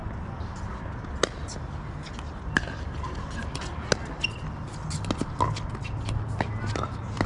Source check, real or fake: real